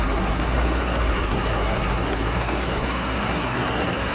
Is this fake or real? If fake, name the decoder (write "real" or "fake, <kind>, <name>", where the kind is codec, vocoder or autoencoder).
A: fake, codec, SNAC